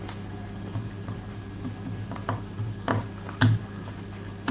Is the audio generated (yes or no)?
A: no